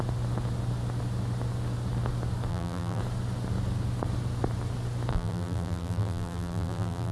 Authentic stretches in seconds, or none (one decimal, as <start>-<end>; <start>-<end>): 0.0-2.5; 3.0-5.1